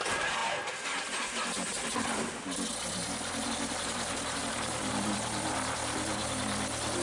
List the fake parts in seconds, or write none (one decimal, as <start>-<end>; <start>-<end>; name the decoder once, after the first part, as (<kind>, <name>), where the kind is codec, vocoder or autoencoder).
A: none